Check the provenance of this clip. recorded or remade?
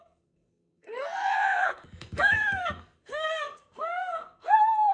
remade